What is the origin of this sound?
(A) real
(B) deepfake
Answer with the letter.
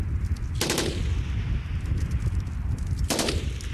A